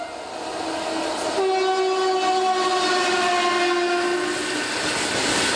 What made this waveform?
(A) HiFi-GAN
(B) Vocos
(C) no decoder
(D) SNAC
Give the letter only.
C